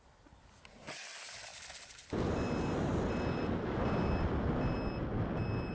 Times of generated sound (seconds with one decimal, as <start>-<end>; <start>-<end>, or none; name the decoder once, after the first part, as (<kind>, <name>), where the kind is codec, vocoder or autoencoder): none

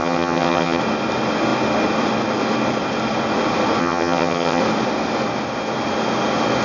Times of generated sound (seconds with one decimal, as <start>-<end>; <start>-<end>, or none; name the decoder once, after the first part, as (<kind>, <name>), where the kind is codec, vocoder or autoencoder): 0.0-0.8 (vocoder, HiFi-GAN); 3.8-4.6

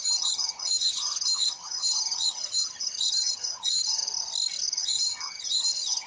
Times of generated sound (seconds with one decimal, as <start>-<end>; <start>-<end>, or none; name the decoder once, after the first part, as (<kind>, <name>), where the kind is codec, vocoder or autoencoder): 0.0-4.0 (vocoder, HiFi-GAN); 4.8-6.1